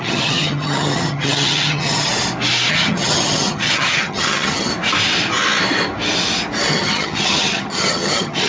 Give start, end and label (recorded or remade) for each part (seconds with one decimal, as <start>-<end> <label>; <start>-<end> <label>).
0.0-2.1 remade; 2.1-2.7 recorded; 2.7-4.7 remade; 4.7-6.7 recorded; 6.7-8.5 remade